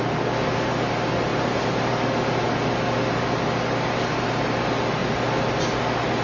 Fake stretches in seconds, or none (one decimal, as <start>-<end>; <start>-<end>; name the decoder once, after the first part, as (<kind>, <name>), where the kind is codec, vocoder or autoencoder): none

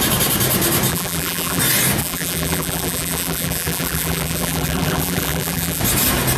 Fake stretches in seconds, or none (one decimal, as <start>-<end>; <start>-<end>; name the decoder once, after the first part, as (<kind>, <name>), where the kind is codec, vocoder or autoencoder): 0.9-1.6 (vocoder, BigVGAN v2); 2.0-5.8